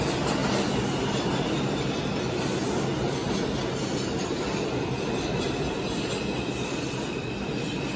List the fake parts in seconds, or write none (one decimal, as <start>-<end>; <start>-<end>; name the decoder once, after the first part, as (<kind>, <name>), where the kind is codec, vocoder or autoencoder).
none